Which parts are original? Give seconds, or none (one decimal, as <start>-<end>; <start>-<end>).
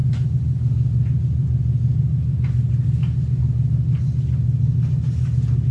0.0-5.7